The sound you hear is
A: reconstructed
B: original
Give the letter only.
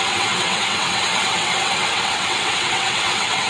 A